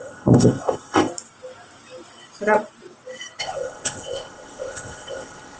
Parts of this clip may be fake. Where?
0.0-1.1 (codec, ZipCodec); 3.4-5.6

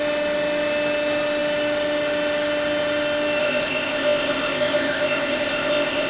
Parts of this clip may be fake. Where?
3.4-6.1 (codec, ZipCodec)

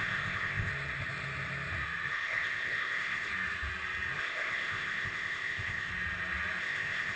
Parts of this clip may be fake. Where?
0.0-0.7 (codec, ZipCodec); 2.1-3.3; 4.2-5.9; 6.6-7.2